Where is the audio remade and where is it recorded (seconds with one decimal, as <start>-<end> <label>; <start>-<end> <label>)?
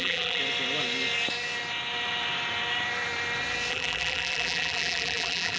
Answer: 0.0-0.4 remade; 0.4-3.7 recorded; 3.7-5.6 remade